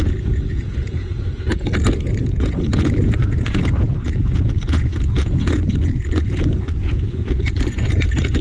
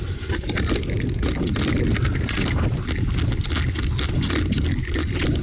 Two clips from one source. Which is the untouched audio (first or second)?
second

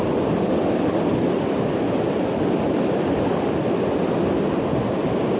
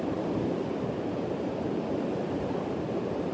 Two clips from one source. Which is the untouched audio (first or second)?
first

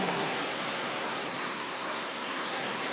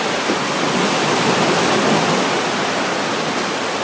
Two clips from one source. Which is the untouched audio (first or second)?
second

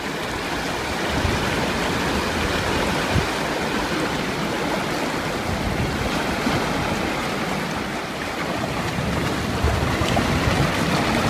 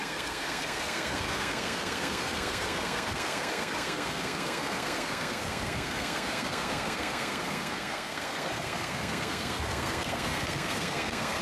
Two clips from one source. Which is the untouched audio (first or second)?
first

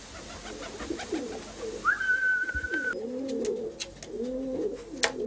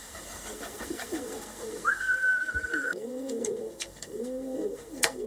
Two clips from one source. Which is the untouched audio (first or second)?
first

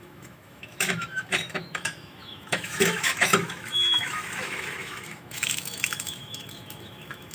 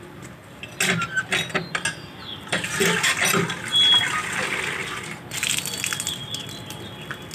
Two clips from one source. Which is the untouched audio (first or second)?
second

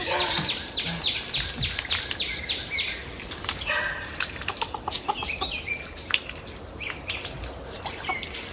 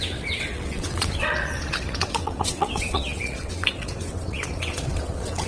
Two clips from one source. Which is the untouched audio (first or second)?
first